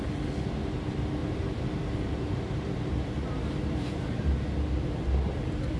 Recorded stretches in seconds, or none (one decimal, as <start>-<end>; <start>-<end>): 0.0-1.2; 4.2-5.8